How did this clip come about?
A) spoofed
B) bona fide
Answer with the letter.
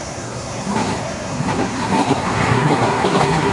A